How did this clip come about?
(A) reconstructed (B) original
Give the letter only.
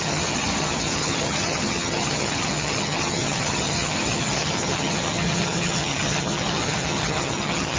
A